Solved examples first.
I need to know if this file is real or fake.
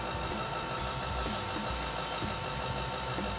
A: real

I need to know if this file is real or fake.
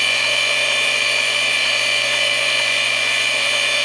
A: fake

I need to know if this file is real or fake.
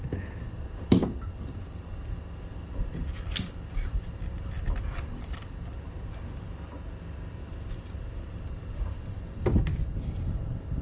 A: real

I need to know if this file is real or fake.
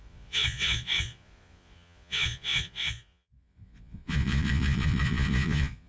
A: fake